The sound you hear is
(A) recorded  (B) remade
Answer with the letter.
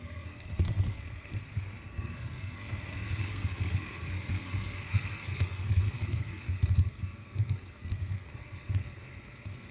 B